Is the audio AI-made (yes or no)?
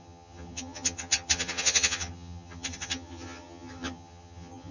yes